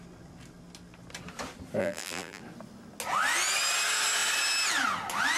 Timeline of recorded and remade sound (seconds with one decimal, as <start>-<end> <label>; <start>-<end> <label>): 0.0-1.8 recorded; 1.8-2.4 remade; 2.4-5.4 recorded